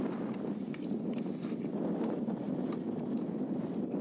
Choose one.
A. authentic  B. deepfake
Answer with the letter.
A